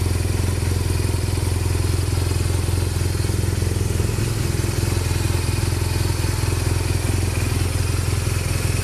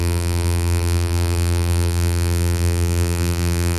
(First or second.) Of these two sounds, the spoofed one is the second